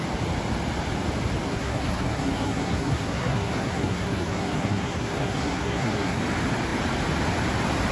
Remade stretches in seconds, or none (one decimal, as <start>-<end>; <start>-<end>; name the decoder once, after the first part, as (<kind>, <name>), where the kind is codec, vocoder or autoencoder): 1.5-6.2 (codec, SNAC)